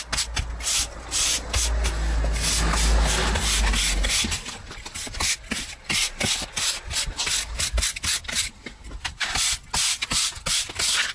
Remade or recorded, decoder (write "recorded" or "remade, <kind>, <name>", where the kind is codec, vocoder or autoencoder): recorded